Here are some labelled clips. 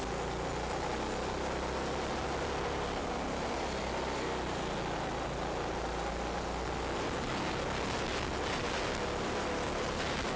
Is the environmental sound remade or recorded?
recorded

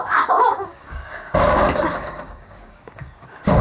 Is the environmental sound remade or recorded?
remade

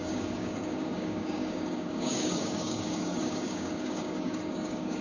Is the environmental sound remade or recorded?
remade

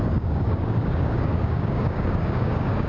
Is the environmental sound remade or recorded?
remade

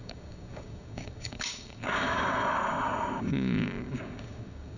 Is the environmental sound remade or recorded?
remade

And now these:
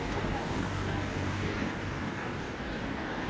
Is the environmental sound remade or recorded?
remade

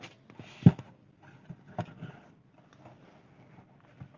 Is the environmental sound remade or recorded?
recorded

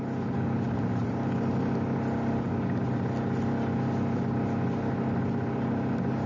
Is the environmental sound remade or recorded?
recorded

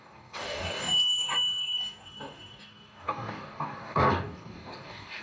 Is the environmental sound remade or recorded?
remade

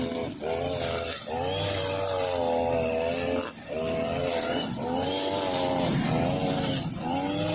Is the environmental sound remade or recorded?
recorded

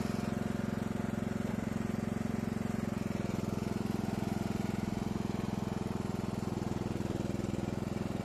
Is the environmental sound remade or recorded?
recorded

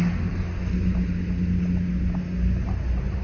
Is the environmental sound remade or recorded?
recorded